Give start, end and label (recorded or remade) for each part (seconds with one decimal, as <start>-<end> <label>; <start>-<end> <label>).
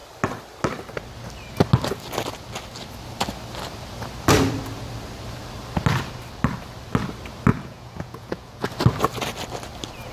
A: 0.0-7.5 recorded; 7.5-8.7 remade; 8.7-10.1 recorded